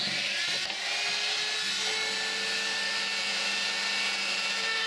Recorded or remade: recorded